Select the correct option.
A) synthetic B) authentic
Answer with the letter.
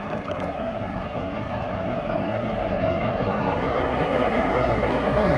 A